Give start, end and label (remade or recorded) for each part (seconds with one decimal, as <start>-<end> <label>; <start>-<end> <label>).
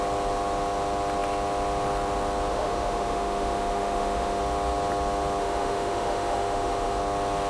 0.0-2.5 recorded; 2.5-4.4 remade; 4.4-5.4 recorded; 5.4-7.0 remade; 7.0-7.5 recorded